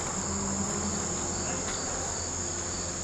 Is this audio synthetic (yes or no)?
no